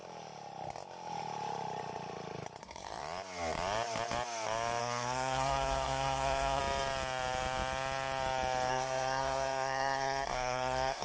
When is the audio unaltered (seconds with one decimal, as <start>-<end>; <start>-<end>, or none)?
0.0-2.6; 3.0-4.8; 6.6-8.7